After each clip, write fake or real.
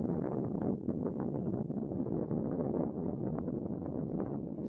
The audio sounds fake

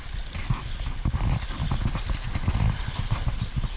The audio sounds real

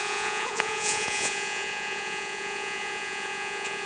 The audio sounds fake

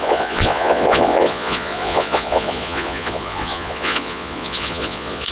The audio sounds fake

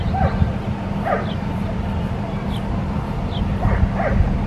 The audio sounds fake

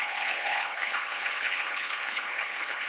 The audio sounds fake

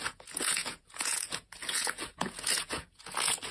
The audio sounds fake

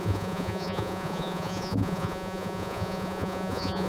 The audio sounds fake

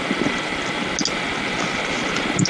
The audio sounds real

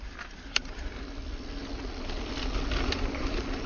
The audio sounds real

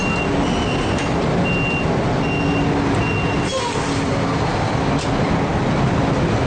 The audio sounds real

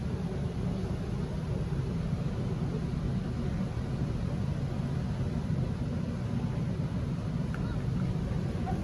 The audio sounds real